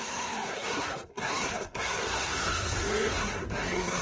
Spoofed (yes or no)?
yes